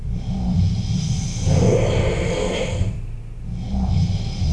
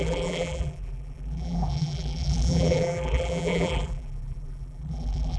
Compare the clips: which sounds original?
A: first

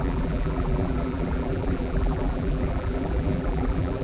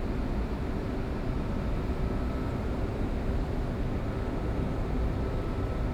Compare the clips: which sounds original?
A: second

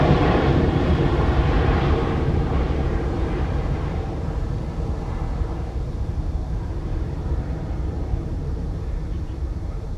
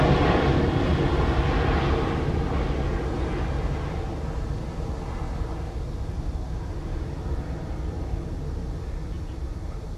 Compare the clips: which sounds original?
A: second